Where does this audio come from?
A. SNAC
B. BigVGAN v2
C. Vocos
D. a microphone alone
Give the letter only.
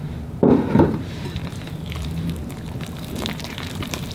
B